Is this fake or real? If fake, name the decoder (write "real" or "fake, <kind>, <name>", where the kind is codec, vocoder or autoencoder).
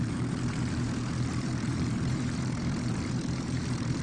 fake, vocoder, BigVGAN v2